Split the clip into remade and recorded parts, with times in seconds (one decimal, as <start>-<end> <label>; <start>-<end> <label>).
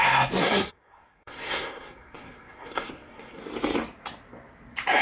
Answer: 0.0-0.4 recorded; 0.4-3.4 remade; 3.4-5.0 recorded